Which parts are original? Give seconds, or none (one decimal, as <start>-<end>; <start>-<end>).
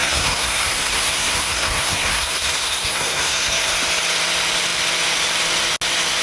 3.7-6.2